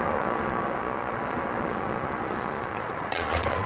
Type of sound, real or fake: fake